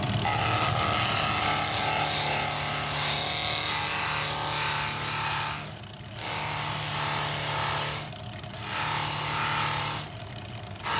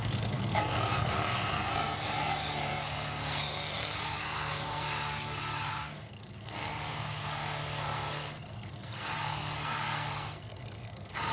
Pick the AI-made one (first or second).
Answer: second